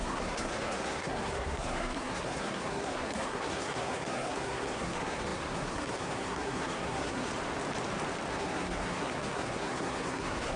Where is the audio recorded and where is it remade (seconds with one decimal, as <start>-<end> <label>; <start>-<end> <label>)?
0.0-7.3 remade; 7.3-8.3 recorded; 8.3-10.6 remade